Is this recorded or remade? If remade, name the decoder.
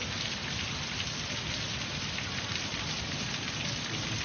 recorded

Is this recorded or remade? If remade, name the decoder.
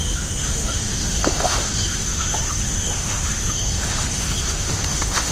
remade, autoencoder, DAC-VAE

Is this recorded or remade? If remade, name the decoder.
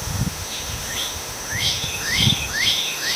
remade, autoencoder, DAC-VAE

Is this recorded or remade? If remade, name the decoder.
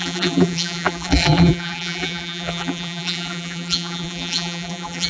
remade, vocoder, BigVGAN v2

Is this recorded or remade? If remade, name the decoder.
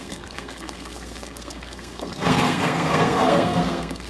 remade, codec, SNAC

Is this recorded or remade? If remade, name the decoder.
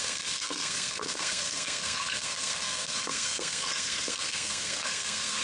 remade, codec, SNAC